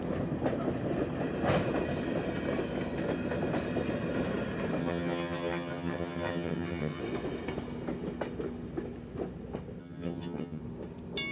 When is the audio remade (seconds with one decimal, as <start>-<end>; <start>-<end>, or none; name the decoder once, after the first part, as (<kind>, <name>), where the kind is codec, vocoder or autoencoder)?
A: 4.8-7.0 (vocoder, HiFi-GAN); 9.8-10.6